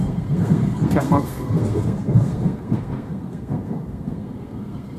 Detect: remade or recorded remade